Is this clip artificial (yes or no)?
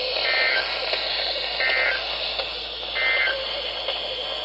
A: no